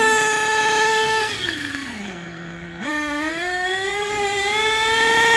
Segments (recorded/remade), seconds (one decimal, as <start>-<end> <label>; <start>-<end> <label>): 0.0-0.9 recorded; 0.9-2.9 remade; 2.9-3.3 recorded; 3.3-4.1 remade; 4.1-5.4 recorded